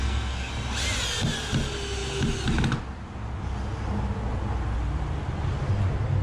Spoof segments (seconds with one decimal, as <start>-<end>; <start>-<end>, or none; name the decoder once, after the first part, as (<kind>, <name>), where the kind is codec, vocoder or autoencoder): 0.0-0.5 (codec, SNAC)